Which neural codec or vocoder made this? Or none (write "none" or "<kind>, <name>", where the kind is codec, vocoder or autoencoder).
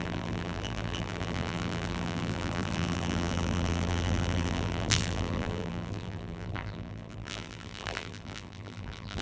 vocoder, BigVGAN v2